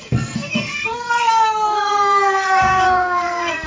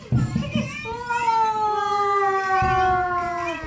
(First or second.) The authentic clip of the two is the second